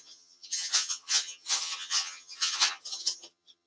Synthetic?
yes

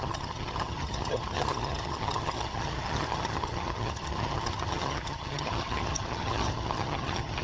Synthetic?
yes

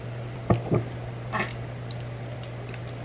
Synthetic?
no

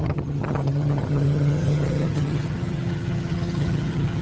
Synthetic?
yes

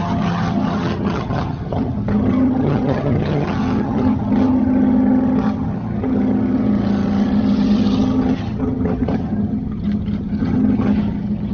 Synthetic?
yes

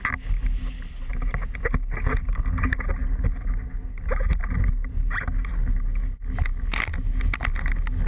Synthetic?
no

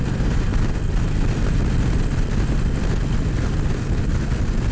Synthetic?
no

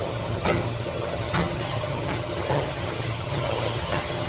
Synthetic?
yes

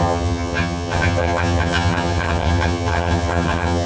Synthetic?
yes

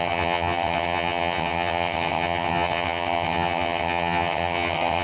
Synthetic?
yes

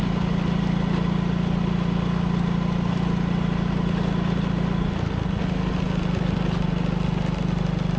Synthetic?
no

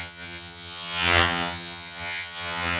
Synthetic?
yes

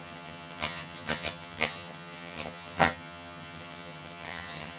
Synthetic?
yes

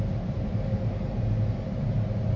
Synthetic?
no